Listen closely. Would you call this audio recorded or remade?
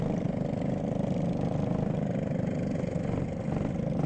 recorded